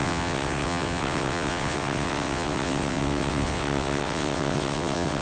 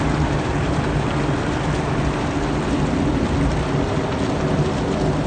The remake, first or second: first